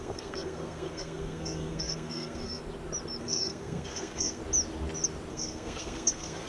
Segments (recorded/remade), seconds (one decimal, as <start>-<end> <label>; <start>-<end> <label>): 0.0-2.6 remade; 2.6-3.2 recorded; 3.2-4.4 remade; 4.4-5.3 recorded; 5.3-6.5 remade